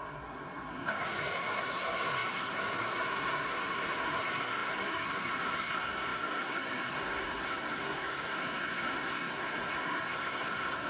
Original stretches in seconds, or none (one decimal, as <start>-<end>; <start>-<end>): none